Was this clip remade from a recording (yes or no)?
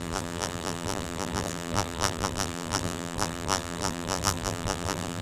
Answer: yes